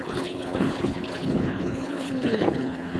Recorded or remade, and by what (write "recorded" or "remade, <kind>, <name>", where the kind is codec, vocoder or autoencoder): remade, codec, HILCodec